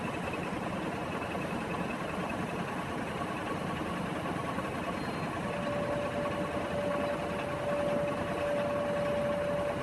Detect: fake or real real